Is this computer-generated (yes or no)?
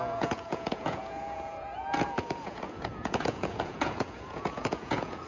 yes